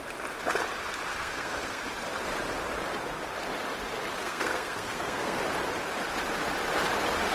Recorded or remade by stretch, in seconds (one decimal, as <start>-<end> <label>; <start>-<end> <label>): 0.0-1.1 recorded; 1.1-1.8 remade; 1.8-4.2 recorded; 4.2-5.4 remade; 5.4-7.3 recorded